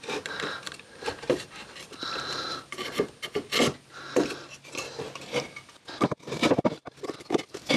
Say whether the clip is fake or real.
real